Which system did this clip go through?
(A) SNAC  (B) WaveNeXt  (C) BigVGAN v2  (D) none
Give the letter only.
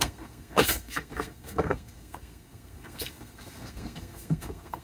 A